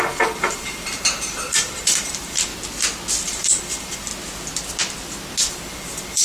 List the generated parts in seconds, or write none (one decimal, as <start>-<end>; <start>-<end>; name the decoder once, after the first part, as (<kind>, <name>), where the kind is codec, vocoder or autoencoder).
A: 0.0-2.5 (vocoder, BigVGAN v2); 3.2-4.1; 5.5-6.2